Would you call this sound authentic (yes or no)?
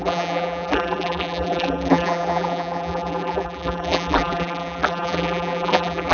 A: no